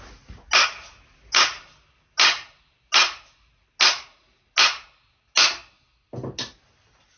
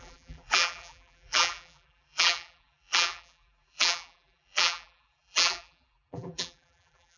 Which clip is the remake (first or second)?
second